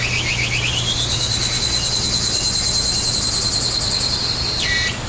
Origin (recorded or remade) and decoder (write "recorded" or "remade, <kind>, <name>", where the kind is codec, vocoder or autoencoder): recorded